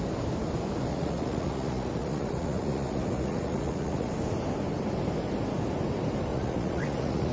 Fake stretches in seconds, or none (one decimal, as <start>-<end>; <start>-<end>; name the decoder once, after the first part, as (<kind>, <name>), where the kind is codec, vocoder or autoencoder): 0.9-4.1 (vocoder, Vocos); 6.3-7.3

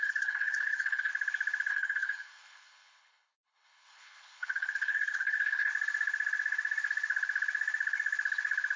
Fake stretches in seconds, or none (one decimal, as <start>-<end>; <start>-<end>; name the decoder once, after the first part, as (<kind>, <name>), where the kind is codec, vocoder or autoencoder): 0.0-1.1 (codec, HILCodec); 1.7-5.7

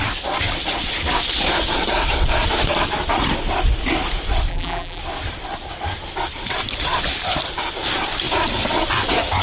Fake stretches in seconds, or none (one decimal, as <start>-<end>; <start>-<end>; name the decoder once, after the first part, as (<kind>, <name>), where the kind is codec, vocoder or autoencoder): 4.5-5.0 (vocoder, BigVGAN v2)

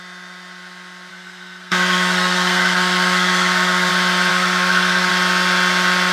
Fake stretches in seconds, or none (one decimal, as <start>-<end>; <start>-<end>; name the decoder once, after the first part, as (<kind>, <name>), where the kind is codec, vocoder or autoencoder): 1.1-3.9 (codec, SNAC); 4.3-5.1